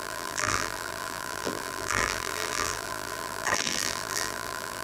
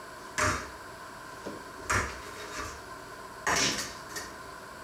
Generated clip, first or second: first